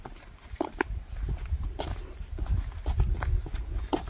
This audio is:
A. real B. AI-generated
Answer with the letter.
A